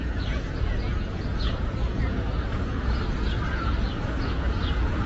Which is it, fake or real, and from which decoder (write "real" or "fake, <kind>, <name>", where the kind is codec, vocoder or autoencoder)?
fake, vocoder, Vocos